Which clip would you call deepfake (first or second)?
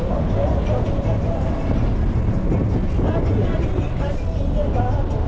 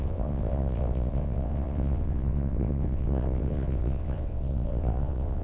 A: second